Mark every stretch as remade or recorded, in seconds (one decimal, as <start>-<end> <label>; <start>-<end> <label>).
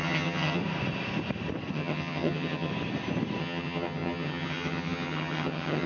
0.0-0.6 remade; 0.6-1.7 recorded; 1.7-2.7 remade; 2.7-3.4 recorded; 3.4-5.9 remade